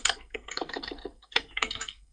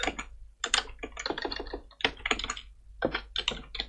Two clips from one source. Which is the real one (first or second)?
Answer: second